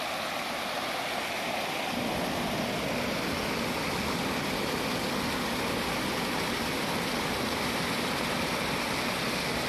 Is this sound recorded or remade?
recorded